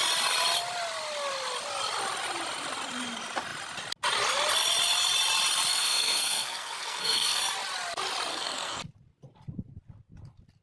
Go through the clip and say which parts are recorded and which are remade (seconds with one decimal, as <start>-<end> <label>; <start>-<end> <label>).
0.0-5.7 recorded; 5.7-7.4 remade; 7.4-8.3 recorded; 8.3-8.8 remade; 8.8-10.6 recorded